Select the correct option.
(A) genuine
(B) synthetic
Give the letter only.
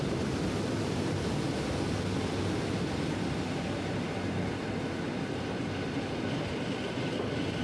A